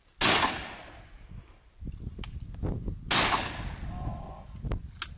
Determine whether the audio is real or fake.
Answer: real